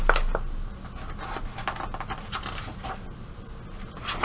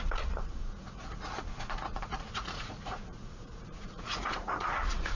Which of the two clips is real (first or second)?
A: first